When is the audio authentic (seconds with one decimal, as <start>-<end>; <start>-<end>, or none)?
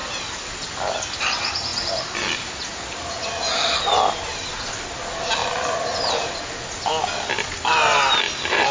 0.0-8.7